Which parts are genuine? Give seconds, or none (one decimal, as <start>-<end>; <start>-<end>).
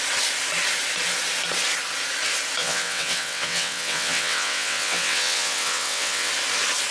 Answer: 0.0-2.6; 6.3-6.9